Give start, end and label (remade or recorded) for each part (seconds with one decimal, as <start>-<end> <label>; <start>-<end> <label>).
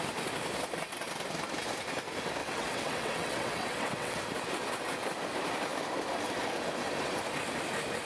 0.0-2.4 recorded; 2.4-4.2 remade; 4.2-8.1 recorded